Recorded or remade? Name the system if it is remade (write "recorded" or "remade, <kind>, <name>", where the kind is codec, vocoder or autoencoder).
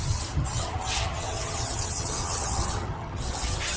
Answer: remade, vocoder, HiFi-GAN